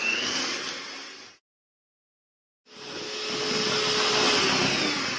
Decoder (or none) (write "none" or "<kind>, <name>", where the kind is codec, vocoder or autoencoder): none